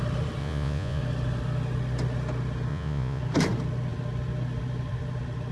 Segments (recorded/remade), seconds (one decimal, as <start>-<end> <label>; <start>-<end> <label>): 0.0-0.4 recorded; 0.4-1.0 remade; 1.0-2.7 recorded; 2.7-3.2 remade; 3.2-5.5 recorded